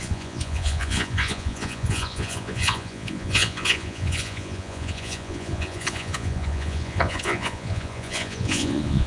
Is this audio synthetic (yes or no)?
yes